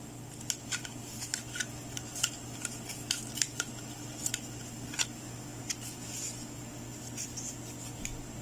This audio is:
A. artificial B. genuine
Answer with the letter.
B